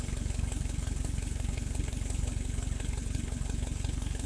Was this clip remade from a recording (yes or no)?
yes